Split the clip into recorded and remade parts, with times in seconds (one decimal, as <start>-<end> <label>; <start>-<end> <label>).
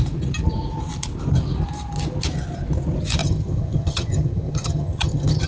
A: 0.0-3.2 recorded; 3.2-5.5 remade